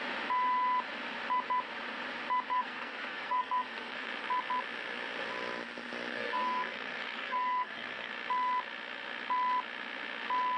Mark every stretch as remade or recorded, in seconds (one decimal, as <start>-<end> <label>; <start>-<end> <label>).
0.0-2.5 recorded; 2.5-4.1 remade; 4.1-6.1 recorded; 6.1-8.1 remade; 8.1-10.6 recorded